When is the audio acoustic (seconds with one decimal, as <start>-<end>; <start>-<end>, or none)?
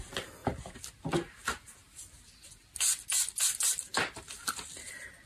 0.0-5.3